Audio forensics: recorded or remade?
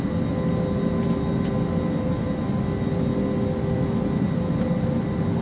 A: recorded